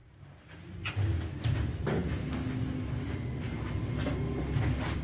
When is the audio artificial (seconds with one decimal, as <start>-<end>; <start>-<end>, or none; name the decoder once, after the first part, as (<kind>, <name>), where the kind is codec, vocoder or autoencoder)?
0.0-0.9 (vocoder, BigVGAN v2)